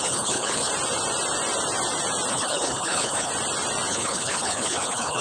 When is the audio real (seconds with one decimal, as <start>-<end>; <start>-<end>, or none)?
0.7-2.3; 3.3-3.9